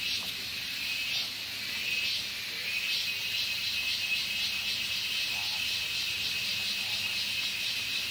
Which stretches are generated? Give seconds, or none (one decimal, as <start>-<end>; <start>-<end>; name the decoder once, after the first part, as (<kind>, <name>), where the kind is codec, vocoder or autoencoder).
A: none